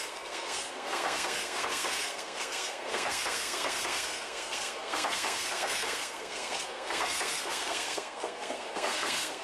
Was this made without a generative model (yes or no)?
no